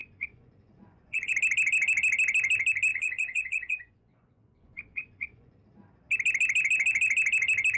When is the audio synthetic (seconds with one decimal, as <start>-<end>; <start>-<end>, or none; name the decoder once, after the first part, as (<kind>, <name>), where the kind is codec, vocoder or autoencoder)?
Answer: 0.0-1.3 (vocoder, Vocos); 2.9-5.6